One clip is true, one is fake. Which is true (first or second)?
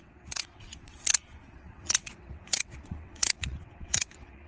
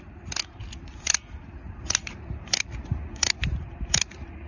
second